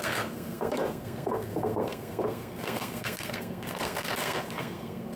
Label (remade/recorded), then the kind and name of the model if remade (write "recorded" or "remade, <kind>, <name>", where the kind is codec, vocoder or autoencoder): remade, codec, SNAC